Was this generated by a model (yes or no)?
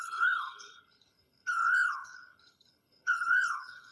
yes